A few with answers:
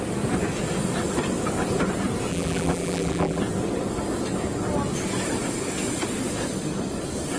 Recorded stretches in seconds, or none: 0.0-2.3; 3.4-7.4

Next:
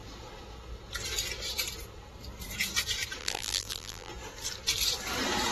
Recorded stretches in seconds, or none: 0.0-3.2; 4.1-5.5

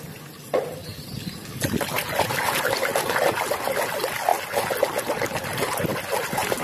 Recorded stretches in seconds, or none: 0.0-6.6

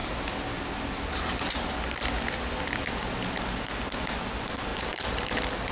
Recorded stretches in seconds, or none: 0.0-4.7; 5.3-5.7

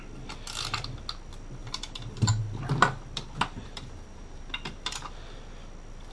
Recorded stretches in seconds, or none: 0.0-1.6; 2.4-3.6; 4.5-6.1

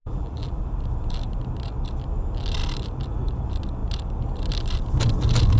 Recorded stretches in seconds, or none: 0.6-5.6